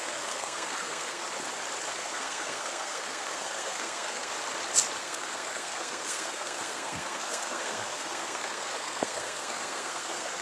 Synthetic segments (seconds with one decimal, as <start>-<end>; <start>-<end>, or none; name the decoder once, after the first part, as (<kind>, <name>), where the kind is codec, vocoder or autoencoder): 0.0-1.2 (codec, SNAC); 1.9-4.3; 5.0-10.4